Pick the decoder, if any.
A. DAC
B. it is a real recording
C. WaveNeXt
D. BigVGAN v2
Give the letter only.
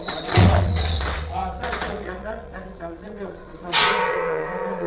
C